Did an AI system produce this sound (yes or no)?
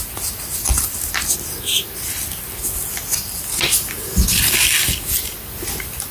no